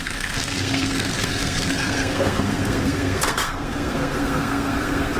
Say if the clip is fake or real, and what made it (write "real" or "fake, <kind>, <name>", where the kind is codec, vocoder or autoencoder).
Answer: fake, codec, SNAC